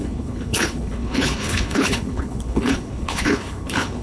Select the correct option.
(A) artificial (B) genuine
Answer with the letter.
A